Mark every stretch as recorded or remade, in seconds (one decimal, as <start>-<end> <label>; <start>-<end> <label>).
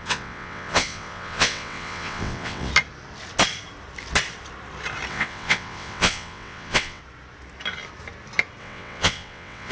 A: 0.0-2.7 remade; 2.7-5.1 recorded; 5.1-7.0 remade; 7.0-8.6 recorded; 8.6-9.7 remade